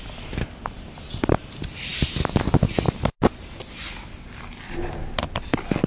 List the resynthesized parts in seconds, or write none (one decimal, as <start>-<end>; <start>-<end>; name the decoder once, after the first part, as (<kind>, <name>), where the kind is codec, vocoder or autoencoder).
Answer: none